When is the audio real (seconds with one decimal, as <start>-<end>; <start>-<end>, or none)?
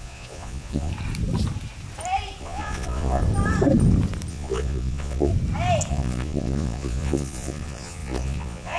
0.9-2.4; 3.2-4.3; 5.3-5.9